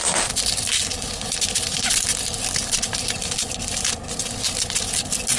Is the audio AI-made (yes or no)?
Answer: no